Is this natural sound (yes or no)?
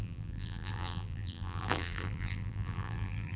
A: no